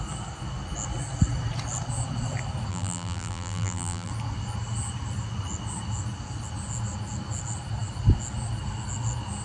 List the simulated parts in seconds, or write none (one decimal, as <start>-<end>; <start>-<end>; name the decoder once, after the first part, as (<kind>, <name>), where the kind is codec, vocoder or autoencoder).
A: 2.7-4.1 (vocoder, BigVGAN v2)

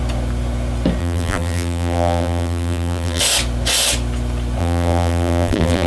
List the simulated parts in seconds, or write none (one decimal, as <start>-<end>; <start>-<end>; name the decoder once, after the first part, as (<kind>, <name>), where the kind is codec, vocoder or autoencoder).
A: 1.0-3.2 (vocoder, BigVGAN v2); 4.6-5.9

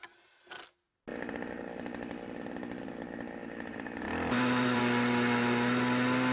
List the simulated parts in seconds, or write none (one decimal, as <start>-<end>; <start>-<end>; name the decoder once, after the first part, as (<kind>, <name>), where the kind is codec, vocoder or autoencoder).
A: 1.1-4.8 (vocoder, BigVGAN v2)

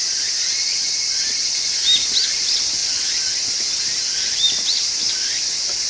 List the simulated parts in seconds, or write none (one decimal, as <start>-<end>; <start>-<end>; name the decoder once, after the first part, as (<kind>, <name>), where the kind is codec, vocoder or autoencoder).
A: 0.0-0.7 (vocoder, BigVGAN v2); 1.3-1.8; 2.3-5.9

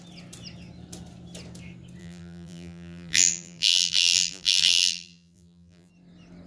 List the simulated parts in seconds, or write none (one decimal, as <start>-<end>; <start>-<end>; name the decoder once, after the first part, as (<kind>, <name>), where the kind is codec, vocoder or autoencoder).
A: 2.0-5.9 (vocoder, BigVGAN v2)

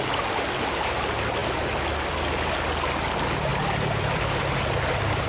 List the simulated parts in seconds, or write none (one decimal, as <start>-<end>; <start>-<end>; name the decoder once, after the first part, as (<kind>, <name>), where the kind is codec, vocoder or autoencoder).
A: 3.5-4.4 (vocoder, BigVGAN v2)